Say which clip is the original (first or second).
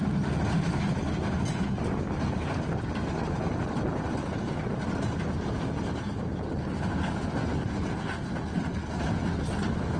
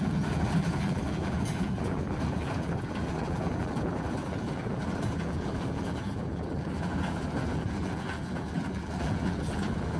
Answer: first